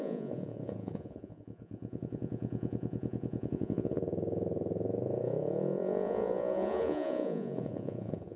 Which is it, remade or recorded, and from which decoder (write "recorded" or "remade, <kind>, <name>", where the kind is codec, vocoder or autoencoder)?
remade, vocoder, Vocos